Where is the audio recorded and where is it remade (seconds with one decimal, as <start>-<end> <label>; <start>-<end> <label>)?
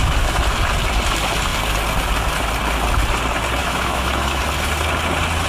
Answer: 0.0-3.6 recorded; 3.6-4.4 remade; 4.4-5.5 recorded